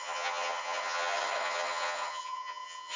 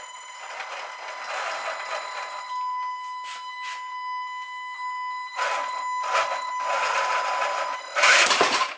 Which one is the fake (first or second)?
first